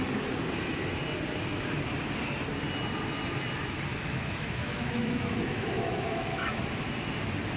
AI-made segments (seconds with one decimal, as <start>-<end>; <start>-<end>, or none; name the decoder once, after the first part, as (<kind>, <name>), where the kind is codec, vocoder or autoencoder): 3.9-6.6 (autoencoder, DAC-VAE)